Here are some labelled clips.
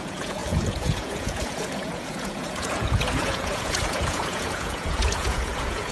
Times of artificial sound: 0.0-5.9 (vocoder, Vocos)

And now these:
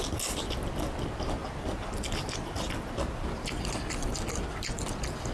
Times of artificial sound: none

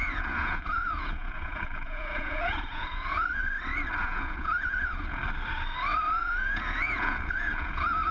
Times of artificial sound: 0.0-3.4 (vocoder, Vocos); 4.0-5.2; 6.2-8.1

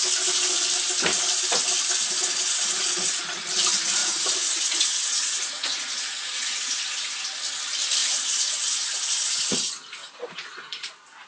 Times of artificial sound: 2.2-3.4 (vocoder, Vocos); 4.0-7.2; 8.0-9.4; 10.0-10.9

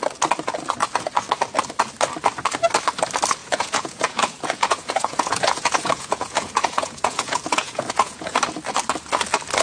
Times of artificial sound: 3.4-8.4 (vocoder, Vocos)

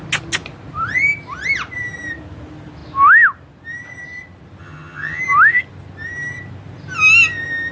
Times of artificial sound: 4.6-5.2 (vocoder, HiFi-GAN)

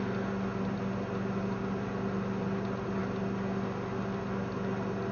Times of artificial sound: none

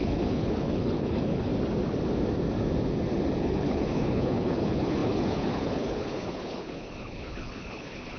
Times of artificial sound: 0.0-1.5 (codec, HILCodec); 3.4-8.2